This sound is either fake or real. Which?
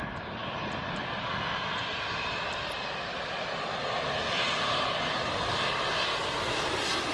real